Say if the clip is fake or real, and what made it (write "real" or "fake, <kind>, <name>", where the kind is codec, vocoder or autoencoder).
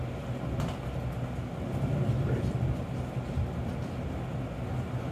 real